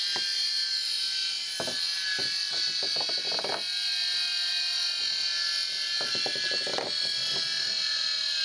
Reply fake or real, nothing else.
real